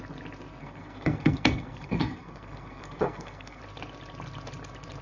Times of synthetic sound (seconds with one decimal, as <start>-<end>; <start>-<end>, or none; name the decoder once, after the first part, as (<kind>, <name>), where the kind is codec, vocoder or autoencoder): 0.6-3.6 (codec, SNAC)